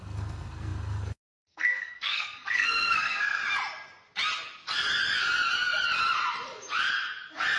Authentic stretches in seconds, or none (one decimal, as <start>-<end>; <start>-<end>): 3.4-7.6